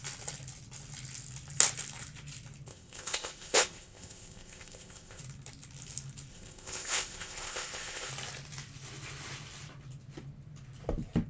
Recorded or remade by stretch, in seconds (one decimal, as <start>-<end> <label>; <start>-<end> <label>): 0.0-2.7 recorded; 2.7-5.2 remade; 5.2-6.3 recorded; 6.3-8.1 remade; 8.1-11.3 recorded